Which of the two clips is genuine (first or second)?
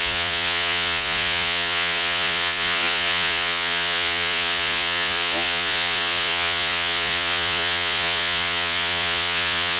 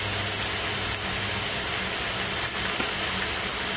second